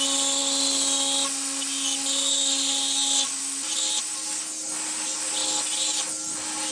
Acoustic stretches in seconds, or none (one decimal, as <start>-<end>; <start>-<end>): 0.0-6.7